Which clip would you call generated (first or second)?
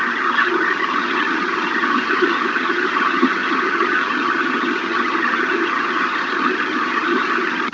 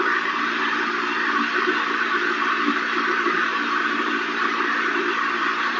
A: first